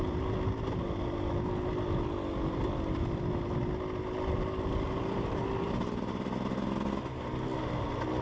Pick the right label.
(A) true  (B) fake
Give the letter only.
A